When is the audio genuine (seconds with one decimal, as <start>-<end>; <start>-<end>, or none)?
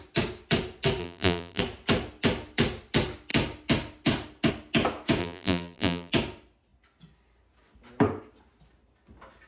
0.0-1.0; 1.6-5.2; 6.1-9.5